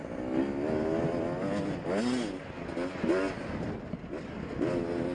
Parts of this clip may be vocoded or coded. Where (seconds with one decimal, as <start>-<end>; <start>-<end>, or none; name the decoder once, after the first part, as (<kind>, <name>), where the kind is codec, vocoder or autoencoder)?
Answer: none